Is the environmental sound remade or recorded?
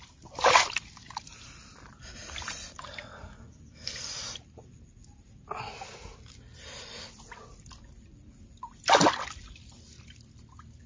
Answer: recorded